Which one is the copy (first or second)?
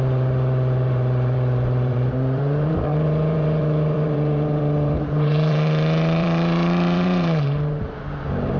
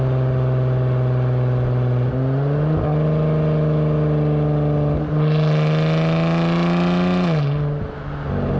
first